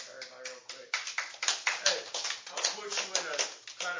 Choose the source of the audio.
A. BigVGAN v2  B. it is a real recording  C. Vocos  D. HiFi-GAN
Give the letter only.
B